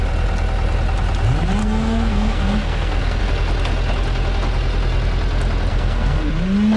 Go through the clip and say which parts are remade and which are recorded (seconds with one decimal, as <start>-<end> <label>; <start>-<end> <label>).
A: 0.0-1.6 recorded; 1.6-3.2 remade; 3.2-5.7 recorded; 5.7-6.3 remade; 6.3-6.8 recorded